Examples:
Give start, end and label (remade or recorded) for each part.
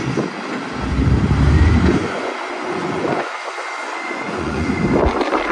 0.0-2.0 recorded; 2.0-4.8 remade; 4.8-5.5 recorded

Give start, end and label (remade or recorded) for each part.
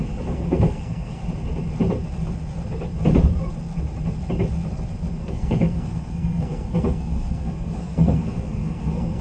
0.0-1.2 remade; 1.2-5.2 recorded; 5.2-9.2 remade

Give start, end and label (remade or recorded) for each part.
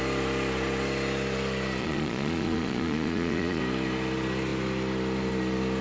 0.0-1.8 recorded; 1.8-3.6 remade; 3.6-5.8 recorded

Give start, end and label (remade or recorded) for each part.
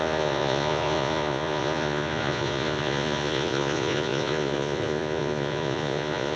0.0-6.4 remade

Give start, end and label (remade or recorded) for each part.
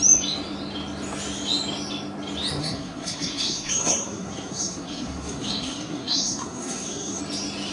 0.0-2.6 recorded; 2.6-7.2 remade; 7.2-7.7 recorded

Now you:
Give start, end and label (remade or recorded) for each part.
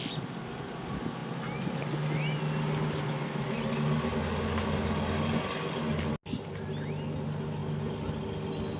0.0-8.8 recorded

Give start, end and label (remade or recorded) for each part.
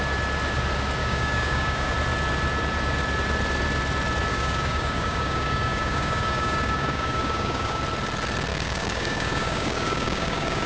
0.0-1.0 recorded; 1.0-1.9 remade; 1.9-4.3 recorded; 4.3-7.8 remade; 7.8-8.5 recorded; 8.5-10.7 remade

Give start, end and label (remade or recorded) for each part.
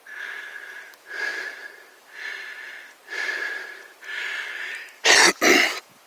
0.0-6.1 recorded